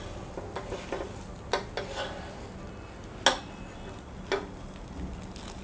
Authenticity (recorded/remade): recorded